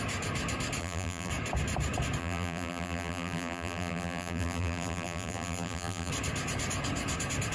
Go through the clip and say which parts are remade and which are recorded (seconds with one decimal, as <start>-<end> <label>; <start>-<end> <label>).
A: 0.0-0.8 recorded; 0.8-1.3 remade; 1.3-2.2 recorded; 2.2-6.1 remade; 6.1-7.5 recorded